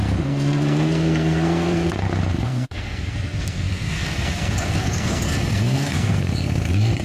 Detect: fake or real fake